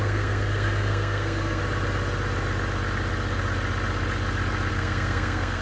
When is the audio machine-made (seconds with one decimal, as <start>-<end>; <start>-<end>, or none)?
0.0-1.6; 4.7-5.6

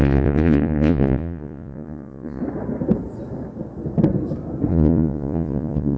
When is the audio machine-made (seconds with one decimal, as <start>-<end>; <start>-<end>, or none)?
0.0-2.4; 4.7-6.0

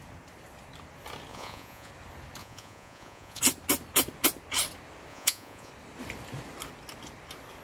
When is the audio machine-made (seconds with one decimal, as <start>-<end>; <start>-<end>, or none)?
1.3-1.9; 2.4-3.4; 5.1-5.7